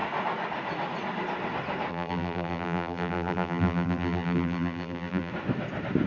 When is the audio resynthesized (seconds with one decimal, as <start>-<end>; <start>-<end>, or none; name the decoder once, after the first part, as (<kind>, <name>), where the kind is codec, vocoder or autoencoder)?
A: 1.9-5.3 (vocoder, BigVGAN v2)